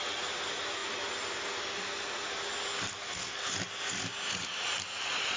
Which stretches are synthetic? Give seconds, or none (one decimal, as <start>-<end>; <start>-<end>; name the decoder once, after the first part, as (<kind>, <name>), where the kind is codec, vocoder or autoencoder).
3.0-3.5 (codec, SNAC)